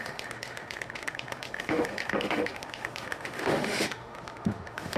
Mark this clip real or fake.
fake